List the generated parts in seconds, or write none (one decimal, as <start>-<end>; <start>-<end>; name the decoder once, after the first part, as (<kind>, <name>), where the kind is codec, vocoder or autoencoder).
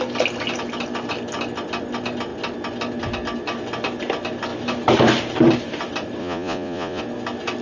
6.2-7.0 (vocoder, Vocos)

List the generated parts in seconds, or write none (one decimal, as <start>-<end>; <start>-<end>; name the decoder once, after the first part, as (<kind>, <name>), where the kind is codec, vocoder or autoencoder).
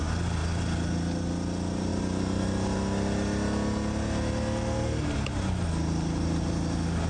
none